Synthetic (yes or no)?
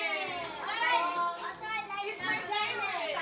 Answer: no